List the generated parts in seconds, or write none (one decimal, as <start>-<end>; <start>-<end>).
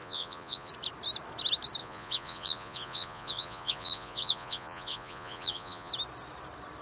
0.0-0.7; 1.8-5.9